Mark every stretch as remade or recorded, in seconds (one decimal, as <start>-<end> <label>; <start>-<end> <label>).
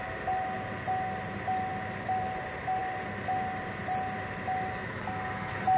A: 0.0-5.8 recorded